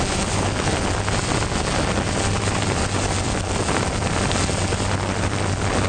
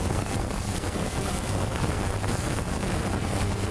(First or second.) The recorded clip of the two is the first